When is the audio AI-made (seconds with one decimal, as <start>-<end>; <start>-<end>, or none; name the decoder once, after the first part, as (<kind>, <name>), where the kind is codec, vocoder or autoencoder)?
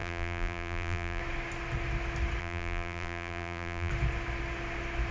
0.0-1.2 (vocoder, BigVGAN v2); 2.4-3.9